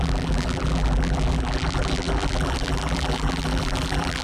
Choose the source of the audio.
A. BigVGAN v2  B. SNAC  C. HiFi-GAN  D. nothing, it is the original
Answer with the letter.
A